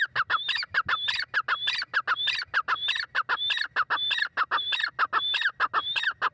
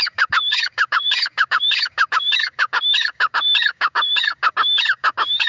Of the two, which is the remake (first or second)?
second